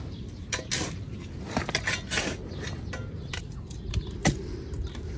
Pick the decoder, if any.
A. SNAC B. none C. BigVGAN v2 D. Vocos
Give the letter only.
B